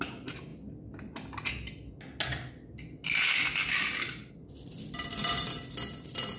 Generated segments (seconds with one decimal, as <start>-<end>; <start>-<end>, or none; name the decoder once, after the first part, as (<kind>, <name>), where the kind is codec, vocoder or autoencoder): none